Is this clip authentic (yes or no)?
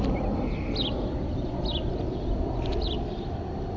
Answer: yes